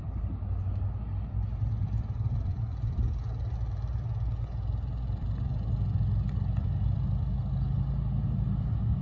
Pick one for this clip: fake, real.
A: real